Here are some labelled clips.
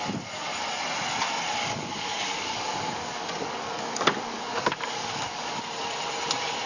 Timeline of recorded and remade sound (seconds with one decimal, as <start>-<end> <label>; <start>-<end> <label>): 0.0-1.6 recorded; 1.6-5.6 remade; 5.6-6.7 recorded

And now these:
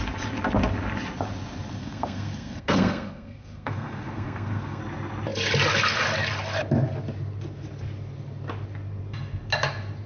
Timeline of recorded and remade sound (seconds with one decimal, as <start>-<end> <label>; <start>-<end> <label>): 0.0-1.8 recorded; 1.8-4.8 remade; 4.8-10.1 recorded

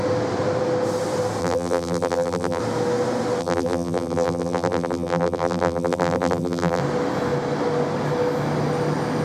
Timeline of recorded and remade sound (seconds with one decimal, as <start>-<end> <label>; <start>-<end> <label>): 0.0-1.4 recorded; 1.4-2.6 remade; 2.6-3.4 recorded; 3.4-6.8 remade; 6.8-9.2 recorded

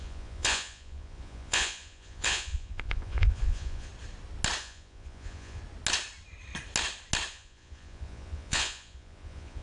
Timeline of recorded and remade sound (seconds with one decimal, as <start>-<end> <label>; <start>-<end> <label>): 0.0-3.9 remade; 3.9-4.6 recorded; 4.6-5.6 remade; 5.6-7.3 recorded; 7.3-9.6 remade